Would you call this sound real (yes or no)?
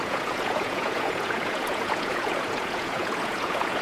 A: no